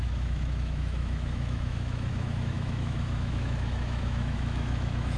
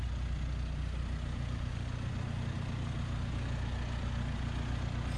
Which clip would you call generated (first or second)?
first